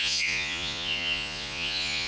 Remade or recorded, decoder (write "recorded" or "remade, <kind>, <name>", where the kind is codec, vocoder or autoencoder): remade, vocoder, Vocos